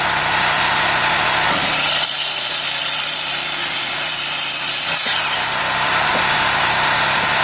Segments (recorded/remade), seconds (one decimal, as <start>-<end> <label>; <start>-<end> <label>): 0.0-7.4 recorded